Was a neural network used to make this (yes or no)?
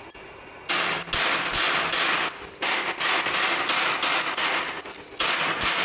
no